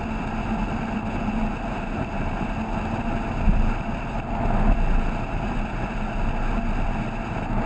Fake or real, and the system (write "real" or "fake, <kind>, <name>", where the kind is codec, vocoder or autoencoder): real